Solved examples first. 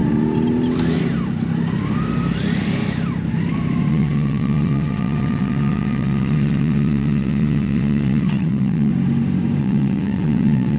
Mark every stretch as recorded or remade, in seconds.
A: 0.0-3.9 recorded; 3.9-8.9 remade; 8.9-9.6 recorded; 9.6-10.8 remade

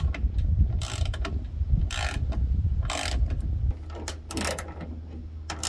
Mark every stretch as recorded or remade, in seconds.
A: 0.0-5.7 recorded

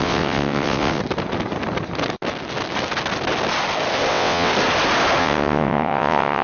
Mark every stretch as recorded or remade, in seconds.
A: 0.0-1.0 remade; 1.0-4.1 recorded; 4.1-4.5 remade; 4.5-5.2 recorded; 5.2-6.4 remade

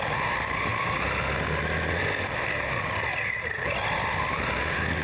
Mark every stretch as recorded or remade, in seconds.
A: 0.0-5.0 recorded

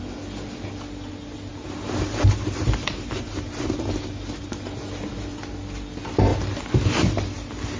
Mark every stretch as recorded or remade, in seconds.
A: 0.0-7.8 recorded

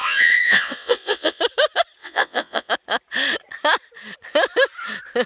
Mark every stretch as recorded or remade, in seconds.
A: 0.0-1.4 remade; 1.4-2.0 recorded; 2.0-2.7 remade; 2.7-5.3 recorded